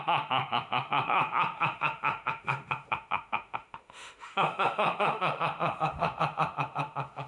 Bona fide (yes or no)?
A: no